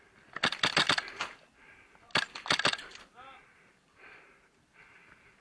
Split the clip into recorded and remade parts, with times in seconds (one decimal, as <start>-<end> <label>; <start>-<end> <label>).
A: 0.0-5.4 recorded